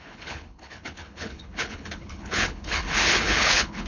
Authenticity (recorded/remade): remade